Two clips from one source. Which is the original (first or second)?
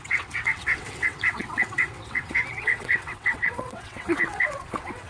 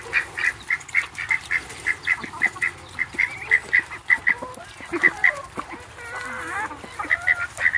second